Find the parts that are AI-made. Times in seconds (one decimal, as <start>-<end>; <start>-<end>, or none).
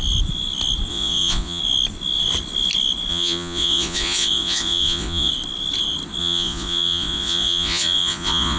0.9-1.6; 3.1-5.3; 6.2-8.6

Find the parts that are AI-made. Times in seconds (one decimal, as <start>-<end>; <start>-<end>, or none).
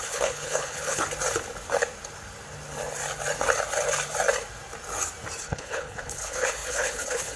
0.0-1.0; 5.4-7.4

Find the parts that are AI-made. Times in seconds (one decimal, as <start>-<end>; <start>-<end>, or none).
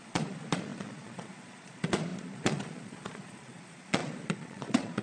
0.0-5.0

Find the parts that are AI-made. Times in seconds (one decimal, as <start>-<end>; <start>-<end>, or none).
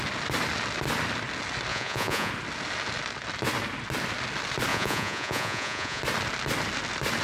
1.7-2.3; 4.7-6.0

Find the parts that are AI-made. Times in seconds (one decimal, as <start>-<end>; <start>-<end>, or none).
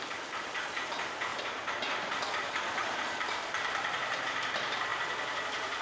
1.3-4.2; 4.9-5.8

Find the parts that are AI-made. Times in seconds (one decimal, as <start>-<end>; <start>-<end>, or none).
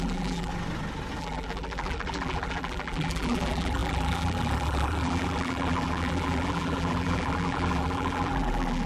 0.0-0.5; 1.2-8.9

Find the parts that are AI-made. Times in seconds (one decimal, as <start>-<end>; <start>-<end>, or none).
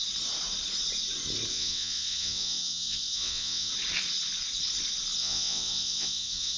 1.5-3.7; 5.2-6.6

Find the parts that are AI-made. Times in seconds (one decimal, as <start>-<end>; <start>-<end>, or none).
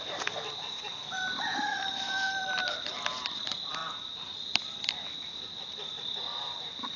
1.7-3.0